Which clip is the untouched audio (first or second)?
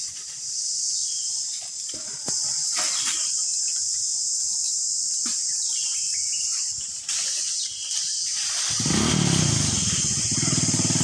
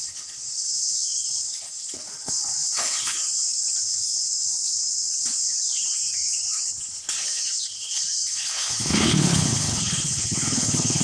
first